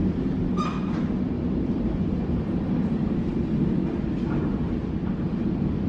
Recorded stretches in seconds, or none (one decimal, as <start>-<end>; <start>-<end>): 0.0-5.9